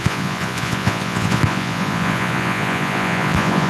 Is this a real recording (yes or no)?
no